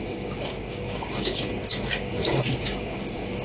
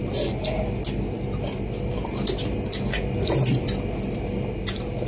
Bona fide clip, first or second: second